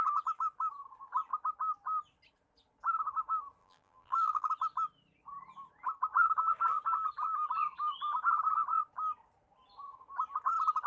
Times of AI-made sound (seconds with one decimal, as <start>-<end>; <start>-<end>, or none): 3.6-4.5